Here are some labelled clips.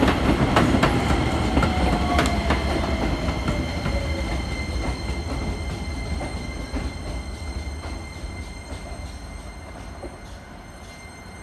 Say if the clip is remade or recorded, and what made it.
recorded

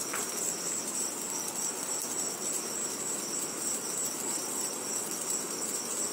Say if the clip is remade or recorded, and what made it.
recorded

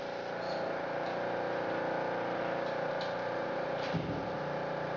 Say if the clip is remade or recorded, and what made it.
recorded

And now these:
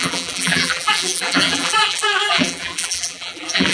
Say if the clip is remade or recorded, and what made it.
remade, vocoder, BigVGAN v2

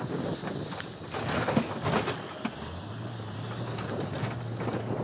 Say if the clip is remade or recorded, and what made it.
recorded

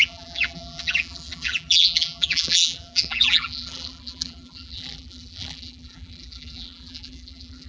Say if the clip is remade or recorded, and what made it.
remade, vocoder, BigVGAN v2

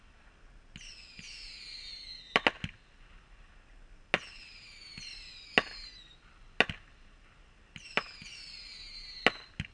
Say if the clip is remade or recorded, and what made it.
recorded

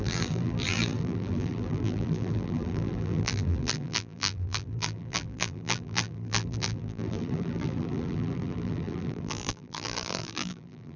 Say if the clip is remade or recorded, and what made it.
remade, vocoder, BigVGAN v2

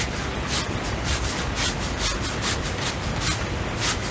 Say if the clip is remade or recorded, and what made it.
recorded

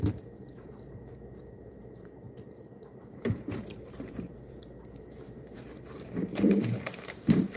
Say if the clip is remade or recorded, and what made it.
remade, vocoder, BigVGAN v2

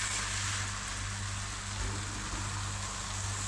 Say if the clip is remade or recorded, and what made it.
recorded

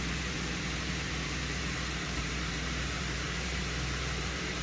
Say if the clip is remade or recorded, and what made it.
remade, vocoder, BigVGAN v2